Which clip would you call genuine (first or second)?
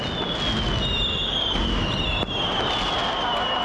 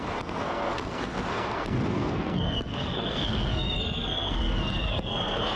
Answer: first